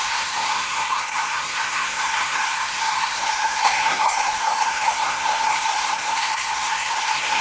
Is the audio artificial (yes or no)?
yes